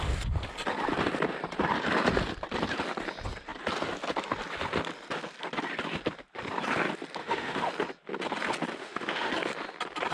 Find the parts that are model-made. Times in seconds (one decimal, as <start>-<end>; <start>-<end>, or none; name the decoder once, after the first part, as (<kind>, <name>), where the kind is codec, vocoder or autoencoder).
7.2-7.7 (autoencoder, DAC-VAE); 8.8-9.3

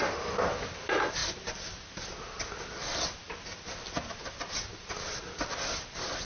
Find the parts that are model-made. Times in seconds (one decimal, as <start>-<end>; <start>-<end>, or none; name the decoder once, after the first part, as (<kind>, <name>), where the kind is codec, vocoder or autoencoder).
none

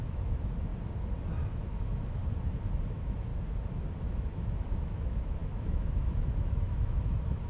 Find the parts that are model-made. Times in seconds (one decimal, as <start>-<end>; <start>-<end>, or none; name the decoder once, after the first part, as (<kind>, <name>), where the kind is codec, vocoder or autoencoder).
0.0-0.7 (autoencoder, DAC-VAE); 1.6-2.2; 2.9-3.3; 4.0-7.5

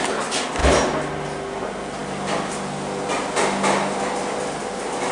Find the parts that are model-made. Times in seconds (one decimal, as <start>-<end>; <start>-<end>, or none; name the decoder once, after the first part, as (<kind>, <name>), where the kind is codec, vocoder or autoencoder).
none

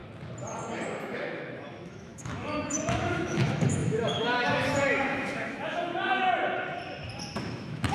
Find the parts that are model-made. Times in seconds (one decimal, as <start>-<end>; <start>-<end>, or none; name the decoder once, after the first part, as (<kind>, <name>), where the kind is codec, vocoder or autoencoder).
1.0-5.9 (autoencoder, DAC-VAE); 7.4-7.9

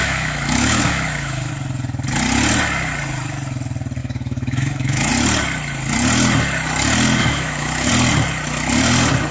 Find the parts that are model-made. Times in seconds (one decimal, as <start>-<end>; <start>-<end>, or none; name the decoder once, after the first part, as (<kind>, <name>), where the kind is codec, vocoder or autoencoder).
0.0-1.5 (autoencoder, DAC-VAE); 4.0-5.1; 7.2-7.9

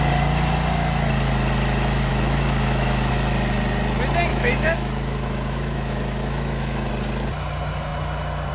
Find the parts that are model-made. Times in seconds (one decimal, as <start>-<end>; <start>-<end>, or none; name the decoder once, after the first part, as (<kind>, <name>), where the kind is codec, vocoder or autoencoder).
2.1-3.1 (autoencoder, DAC-VAE); 4.3-6.9

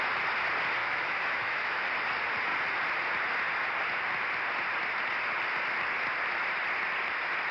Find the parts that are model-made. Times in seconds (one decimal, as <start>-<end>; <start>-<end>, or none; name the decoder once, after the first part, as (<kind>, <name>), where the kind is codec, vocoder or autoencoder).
0.8-1.9 (autoencoder, DAC-VAE)